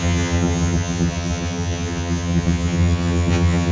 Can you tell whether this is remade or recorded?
remade